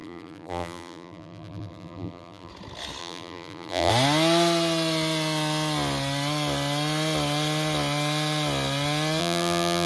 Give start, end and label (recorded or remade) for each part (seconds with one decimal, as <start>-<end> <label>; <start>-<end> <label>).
0.0-2.5 remade; 2.5-3.0 recorded; 3.0-3.9 remade; 3.9-9.2 recorded; 9.2-9.9 remade